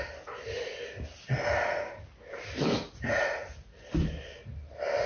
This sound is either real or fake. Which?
real